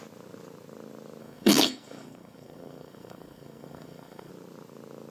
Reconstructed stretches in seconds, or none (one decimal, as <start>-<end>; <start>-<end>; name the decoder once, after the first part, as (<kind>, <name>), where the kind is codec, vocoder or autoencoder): 1.2-4.3 (codec, SNAC)